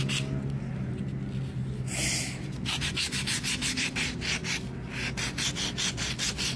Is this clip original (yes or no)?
yes